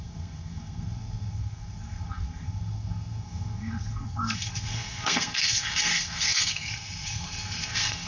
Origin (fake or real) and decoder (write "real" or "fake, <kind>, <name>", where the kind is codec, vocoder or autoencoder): fake, codec, SNAC